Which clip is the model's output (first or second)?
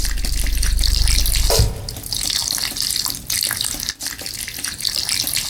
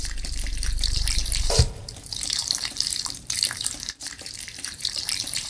second